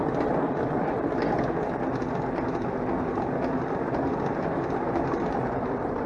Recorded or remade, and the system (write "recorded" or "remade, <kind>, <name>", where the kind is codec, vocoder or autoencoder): recorded